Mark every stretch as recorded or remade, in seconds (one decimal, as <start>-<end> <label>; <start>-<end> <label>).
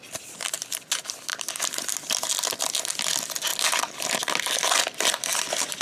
0.0-5.8 recorded